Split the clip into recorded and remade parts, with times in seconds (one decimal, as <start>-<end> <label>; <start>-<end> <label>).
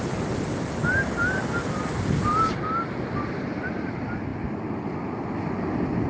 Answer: 0.0-6.1 recorded